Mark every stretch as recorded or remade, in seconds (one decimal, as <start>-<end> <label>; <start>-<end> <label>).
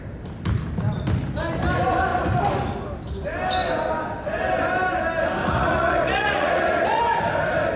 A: 0.0-5.4 recorded; 5.4-7.0 remade; 7.0-7.8 recorded